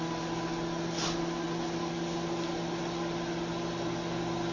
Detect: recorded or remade recorded